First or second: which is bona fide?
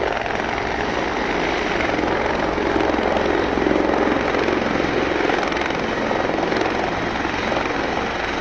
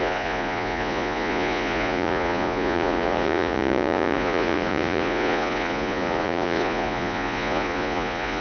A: first